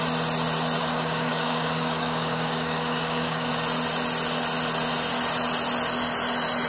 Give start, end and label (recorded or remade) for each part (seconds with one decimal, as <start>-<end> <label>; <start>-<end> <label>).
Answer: 0.0-0.8 recorded; 0.8-3.5 remade; 3.5-6.7 recorded